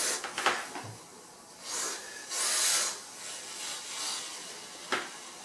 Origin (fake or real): real